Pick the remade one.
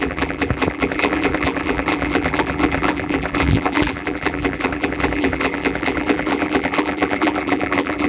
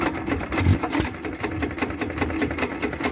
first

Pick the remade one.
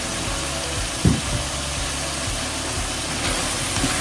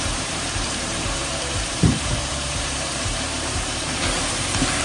second